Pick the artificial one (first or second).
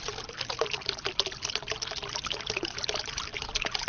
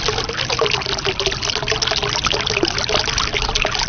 first